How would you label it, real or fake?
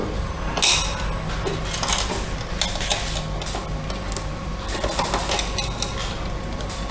real